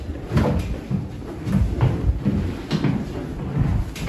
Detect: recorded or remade recorded